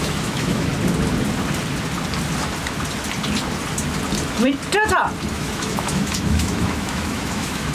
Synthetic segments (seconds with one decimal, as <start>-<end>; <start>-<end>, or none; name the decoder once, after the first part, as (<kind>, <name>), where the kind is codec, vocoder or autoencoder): 0.0-0.7 (autoencoder, DAC-VAE); 5.3-7.7